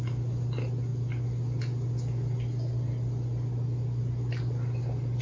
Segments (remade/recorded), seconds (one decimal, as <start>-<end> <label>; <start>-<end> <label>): 0.0-5.2 recorded